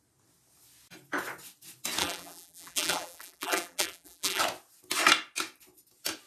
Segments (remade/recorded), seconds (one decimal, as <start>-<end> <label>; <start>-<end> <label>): 0.0-2.0 recorded; 2.0-4.4 remade; 4.4-6.3 recorded